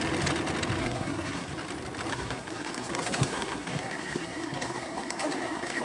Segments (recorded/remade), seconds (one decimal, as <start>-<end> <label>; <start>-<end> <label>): 0.0-0.8 recorded; 0.8-1.5 remade; 1.5-2.1 recorded; 2.1-5.8 remade